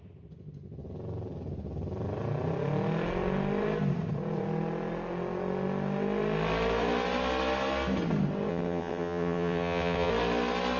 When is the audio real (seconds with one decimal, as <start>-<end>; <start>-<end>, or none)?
0.0-8.5; 10.1-10.8